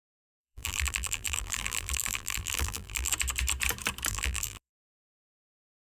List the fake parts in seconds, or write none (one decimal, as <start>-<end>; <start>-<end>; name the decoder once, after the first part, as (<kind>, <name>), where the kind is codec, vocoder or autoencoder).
0.0-3.1 (vocoder, BigVGAN v2); 4.1-4.7